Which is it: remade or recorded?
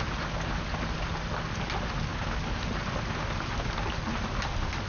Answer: recorded